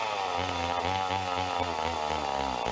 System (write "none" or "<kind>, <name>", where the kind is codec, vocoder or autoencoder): none